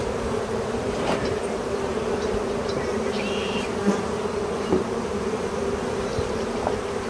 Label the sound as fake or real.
fake